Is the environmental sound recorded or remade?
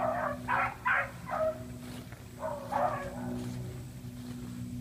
recorded